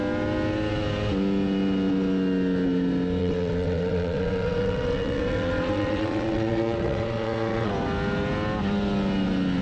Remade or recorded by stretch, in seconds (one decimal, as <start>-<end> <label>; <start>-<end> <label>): 0.0-3.2 recorded; 3.2-7.7 remade; 7.7-9.6 recorded